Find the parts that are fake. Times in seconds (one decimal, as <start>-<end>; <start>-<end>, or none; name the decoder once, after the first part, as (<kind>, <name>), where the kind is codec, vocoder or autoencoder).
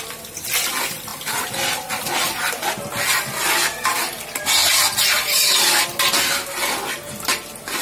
none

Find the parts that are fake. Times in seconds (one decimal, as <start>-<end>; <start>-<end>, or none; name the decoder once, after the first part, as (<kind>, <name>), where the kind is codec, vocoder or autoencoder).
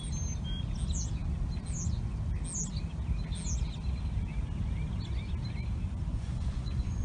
6.1-7.0 (vocoder, Vocos)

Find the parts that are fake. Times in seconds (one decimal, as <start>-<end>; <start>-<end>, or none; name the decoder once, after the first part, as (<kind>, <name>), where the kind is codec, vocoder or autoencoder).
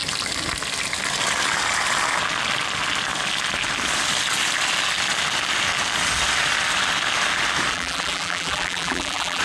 7.7-9.4 (vocoder, BigVGAN v2)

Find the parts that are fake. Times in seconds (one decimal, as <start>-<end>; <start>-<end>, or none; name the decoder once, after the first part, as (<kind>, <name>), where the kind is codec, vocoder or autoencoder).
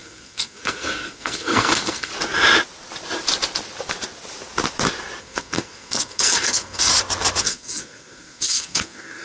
0.0-2.1 (codec, SNAC); 5.2-6.9; 7.4-9.2